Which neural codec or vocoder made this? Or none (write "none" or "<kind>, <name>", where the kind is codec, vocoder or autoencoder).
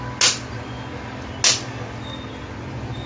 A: none